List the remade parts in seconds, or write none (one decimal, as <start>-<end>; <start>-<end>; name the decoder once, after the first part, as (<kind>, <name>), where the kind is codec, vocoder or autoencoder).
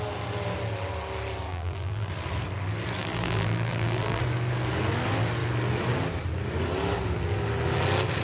1.5-2.1 (vocoder, BigVGAN v2); 3.0-4.2